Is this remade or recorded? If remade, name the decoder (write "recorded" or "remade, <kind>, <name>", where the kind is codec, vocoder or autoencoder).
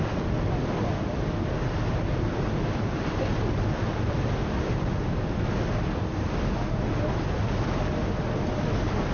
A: recorded